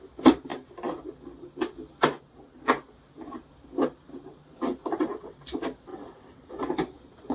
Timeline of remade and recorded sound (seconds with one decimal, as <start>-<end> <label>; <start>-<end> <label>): 0.0-4.8 recorded; 4.8-5.4 remade; 5.4-5.9 recorded; 5.9-6.5 remade; 6.5-7.3 recorded